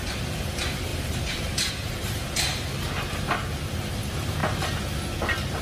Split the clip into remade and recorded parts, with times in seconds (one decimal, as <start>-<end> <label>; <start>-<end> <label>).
0.0-2.5 remade; 2.5-3.7 recorded; 3.7-4.4 remade; 4.4-5.6 recorded